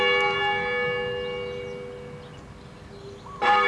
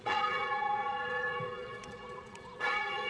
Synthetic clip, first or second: second